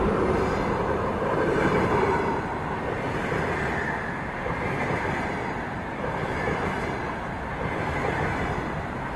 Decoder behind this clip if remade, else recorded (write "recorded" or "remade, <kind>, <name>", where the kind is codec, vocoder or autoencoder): remade, vocoder, BigVGAN v2